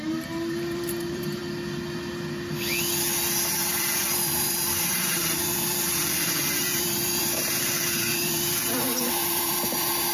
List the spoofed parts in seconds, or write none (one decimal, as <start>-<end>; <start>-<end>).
0.0-1.4; 3.5-10.1